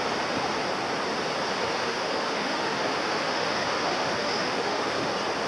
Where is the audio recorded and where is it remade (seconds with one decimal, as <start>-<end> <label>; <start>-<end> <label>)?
0.0-1.8 recorded; 1.8-5.1 remade; 5.1-5.5 recorded